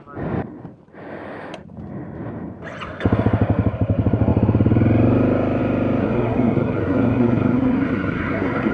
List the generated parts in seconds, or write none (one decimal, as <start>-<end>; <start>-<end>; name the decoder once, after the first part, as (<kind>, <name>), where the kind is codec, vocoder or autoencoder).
6.0-8.7 (codec, SNAC)

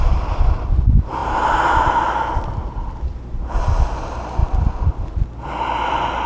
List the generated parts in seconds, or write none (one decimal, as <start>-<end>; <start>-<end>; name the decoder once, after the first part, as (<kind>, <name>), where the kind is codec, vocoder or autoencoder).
none

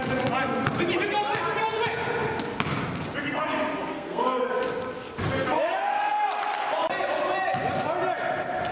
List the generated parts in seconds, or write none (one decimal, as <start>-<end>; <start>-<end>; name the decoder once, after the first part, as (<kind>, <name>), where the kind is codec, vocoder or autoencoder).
3.9-4.5 (codec, SNAC)

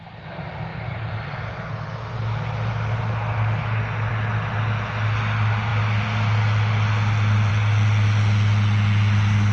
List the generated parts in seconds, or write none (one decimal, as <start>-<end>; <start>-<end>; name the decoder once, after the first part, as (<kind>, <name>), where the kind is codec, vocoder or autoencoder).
none

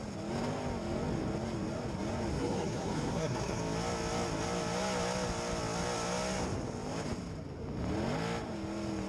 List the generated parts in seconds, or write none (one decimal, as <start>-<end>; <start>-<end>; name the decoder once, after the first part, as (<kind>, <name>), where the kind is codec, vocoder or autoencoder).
2.3-3.6 (codec, SNAC)

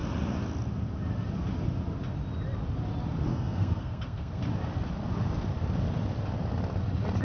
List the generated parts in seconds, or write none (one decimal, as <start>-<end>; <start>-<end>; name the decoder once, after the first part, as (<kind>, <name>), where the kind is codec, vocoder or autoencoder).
3.3-4.4 (codec, SNAC)

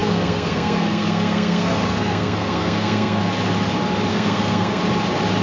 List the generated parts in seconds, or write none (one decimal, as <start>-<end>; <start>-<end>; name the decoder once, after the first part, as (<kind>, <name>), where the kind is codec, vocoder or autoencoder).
0.0-3.2 (codec, SNAC); 4.1-4.8